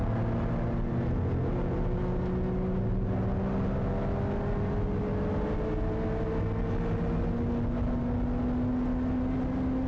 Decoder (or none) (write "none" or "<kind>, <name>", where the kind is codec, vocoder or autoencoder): none